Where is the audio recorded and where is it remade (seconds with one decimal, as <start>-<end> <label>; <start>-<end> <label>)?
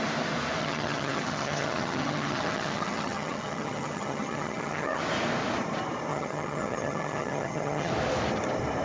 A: 0.0-0.6 recorded; 0.6-5.0 remade; 5.0-6.1 recorded; 6.1-7.9 remade; 7.9-8.8 recorded